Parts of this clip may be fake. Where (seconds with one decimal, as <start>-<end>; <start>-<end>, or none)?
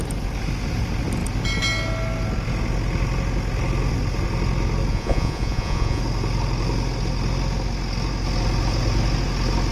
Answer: 4.9-6.0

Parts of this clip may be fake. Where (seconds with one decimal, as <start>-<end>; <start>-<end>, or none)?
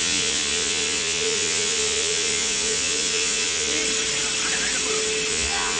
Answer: 0.0-3.8; 5.3-5.8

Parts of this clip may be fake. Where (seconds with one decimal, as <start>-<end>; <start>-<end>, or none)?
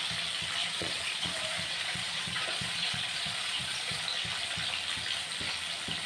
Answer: 0.6-4.0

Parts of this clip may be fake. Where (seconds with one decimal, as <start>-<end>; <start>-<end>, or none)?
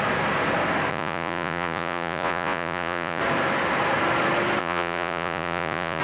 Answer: 0.9-3.2; 4.6-6.0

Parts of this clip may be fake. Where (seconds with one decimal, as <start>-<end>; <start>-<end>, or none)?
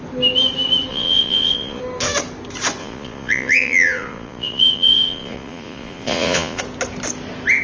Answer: 0.9-1.8; 2.8-6.6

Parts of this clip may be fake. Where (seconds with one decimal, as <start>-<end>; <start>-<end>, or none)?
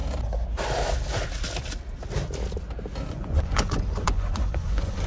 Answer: 3.1-5.1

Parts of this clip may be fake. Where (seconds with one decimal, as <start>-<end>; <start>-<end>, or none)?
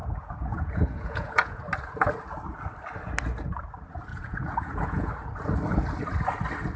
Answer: 0.0-1.6; 4.1-5.1